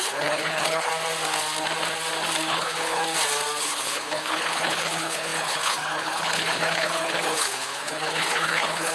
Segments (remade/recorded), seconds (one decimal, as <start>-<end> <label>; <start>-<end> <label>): 0.0-0.9 remade; 0.9-2.5 recorded; 2.5-3.0 remade; 3.0-3.6 recorded; 3.6-8.9 remade